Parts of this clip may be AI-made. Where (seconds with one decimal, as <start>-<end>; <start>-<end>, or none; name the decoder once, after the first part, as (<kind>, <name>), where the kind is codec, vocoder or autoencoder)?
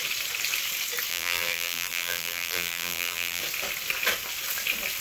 1.1-3.4 (vocoder, BigVGAN v2)